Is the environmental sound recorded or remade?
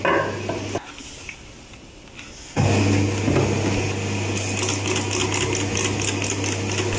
recorded